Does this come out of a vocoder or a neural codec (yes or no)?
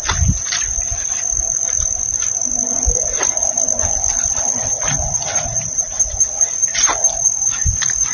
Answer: no